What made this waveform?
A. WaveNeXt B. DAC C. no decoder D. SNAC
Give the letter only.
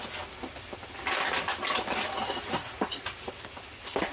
C